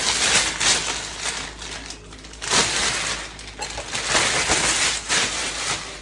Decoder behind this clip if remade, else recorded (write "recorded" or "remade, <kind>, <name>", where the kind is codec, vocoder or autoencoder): recorded